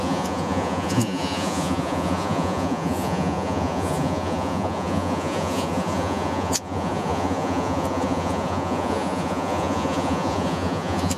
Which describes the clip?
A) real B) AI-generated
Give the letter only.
B